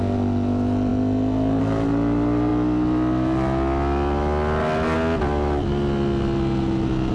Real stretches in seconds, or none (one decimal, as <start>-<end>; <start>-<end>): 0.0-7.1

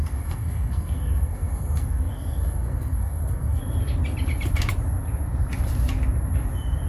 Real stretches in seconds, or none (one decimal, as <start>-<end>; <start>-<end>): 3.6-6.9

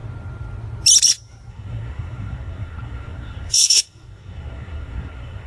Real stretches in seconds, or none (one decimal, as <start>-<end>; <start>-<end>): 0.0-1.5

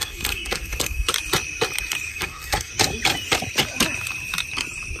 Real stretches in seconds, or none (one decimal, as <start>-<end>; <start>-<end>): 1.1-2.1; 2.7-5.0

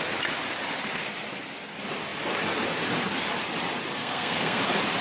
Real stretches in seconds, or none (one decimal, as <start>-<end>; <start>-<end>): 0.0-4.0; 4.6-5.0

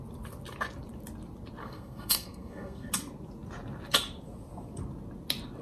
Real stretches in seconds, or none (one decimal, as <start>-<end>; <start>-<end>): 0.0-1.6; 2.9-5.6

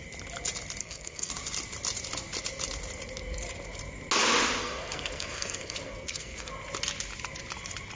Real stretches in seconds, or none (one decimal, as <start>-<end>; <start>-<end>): 0.0-0.8; 1.3-4.6; 6.5-8.0